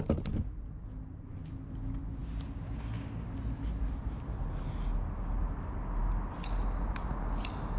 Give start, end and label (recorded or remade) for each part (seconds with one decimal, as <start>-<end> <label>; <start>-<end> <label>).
0.0-7.8 recorded